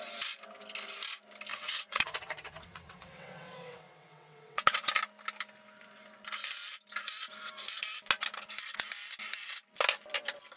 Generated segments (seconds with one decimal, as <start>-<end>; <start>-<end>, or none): 1.5-4.9